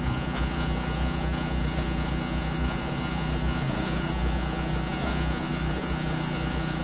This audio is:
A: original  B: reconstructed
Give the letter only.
B